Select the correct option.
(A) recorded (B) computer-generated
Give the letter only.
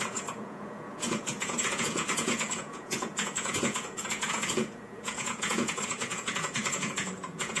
B